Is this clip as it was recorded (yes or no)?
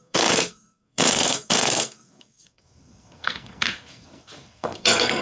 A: no